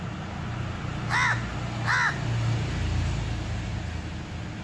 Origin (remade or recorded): recorded